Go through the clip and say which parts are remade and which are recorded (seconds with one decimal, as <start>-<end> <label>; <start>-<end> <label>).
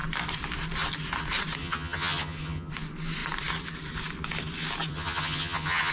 0.0-1.6 recorded; 1.6-2.7 remade; 2.7-4.9 recorded; 4.9-5.9 remade